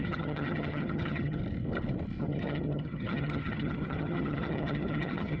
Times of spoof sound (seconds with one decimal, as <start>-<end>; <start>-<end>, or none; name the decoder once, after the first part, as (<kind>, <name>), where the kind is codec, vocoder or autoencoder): 0.0-1.4 (vocoder, HiFi-GAN); 2.2-5.4